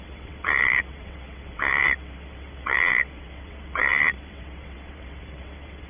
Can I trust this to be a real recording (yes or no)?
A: no